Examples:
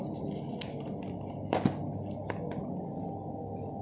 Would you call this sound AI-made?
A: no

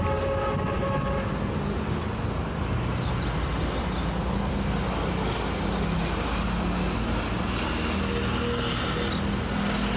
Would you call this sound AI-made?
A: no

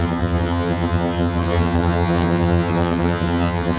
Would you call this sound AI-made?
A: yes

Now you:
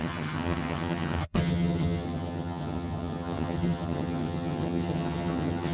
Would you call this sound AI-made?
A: yes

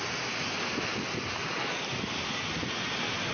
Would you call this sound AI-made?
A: no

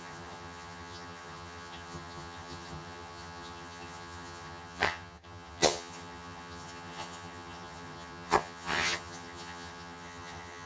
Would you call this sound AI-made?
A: yes